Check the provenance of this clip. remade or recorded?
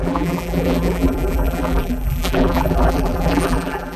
remade